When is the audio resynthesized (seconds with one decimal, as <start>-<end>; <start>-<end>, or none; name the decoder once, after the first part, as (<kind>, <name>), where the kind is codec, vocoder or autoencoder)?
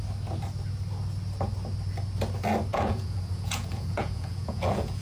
2.7-5.0 (vocoder, Vocos)